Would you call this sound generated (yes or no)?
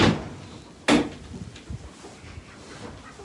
no